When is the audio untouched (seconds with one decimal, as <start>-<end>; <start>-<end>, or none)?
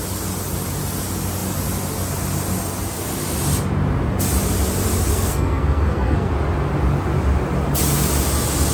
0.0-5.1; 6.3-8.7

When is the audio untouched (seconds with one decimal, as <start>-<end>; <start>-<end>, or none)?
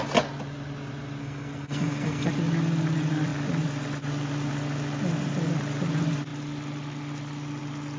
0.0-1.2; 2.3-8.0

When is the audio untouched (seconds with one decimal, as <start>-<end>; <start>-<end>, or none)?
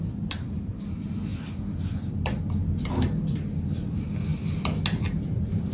0.0-5.7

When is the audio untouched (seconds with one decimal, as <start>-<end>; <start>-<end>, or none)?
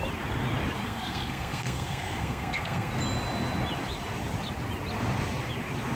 0.0-0.8; 2.9-6.0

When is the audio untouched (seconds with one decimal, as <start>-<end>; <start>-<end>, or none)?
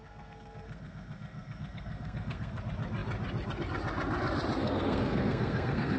2.6-4.6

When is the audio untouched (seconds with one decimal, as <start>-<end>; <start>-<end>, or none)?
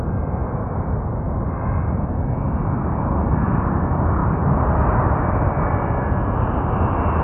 0.0-7.2